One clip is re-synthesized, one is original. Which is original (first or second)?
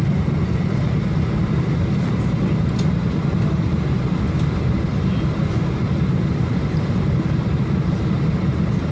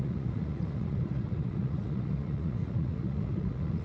first